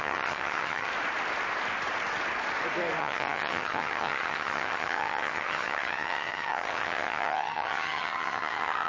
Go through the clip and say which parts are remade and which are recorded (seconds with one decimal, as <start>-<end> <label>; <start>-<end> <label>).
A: 0.0-0.9 remade; 0.9-3.0 recorded; 3.0-8.9 remade